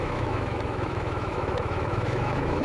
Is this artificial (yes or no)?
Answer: yes